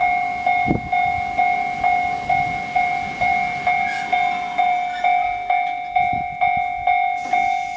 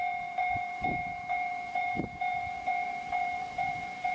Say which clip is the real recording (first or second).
first